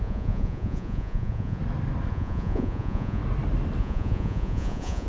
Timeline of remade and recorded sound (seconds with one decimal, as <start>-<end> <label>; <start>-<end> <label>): 0.0-1.6 remade; 1.6-2.1 recorded; 2.1-3.2 remade; 3.2-3.8 recorded; 3.8-5.1 remade